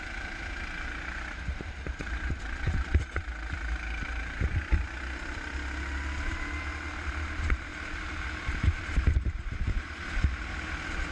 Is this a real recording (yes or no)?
yes